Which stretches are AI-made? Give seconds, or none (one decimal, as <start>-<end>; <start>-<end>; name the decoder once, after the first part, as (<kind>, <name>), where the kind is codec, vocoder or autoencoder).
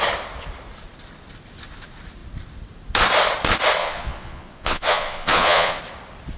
3.8-5.8 (vocoder, Vocos)